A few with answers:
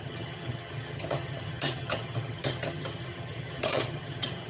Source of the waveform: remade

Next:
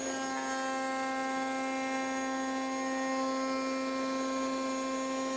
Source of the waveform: recorded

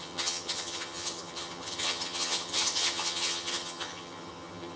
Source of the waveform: remade